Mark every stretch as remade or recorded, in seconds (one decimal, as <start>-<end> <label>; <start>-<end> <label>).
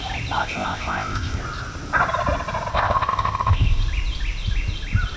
0.0-0.4 recorded; 0.4-1.4 remade; 1.4-2.7 recorded; 2.7-3.8 remade; 3.8-5.2 recorded